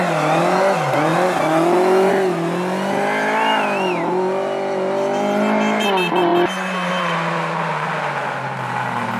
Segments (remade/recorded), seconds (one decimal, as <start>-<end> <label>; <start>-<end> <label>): 0.0-9.2 recorded